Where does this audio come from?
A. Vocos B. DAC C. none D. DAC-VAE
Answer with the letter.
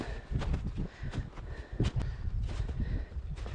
C